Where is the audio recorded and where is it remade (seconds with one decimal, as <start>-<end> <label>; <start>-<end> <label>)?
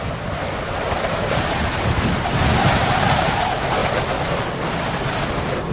0.0-5.7 recorded